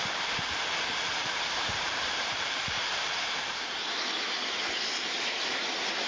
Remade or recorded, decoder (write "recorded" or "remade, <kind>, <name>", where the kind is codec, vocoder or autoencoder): remade, vocoder, BigVGAN v2